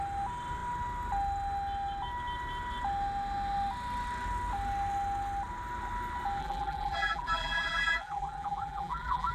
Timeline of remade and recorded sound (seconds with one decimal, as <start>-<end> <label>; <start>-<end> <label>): 0.0-6.4 recorded; 6.4-9.3 remade